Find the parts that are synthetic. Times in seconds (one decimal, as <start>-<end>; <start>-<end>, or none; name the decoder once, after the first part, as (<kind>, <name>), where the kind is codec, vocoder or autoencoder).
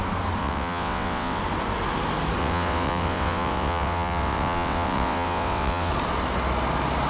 0.4-1.4 (vocoder, WaveNeXt); 2.4-5.9